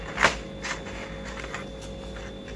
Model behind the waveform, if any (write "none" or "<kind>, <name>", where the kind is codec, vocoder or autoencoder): none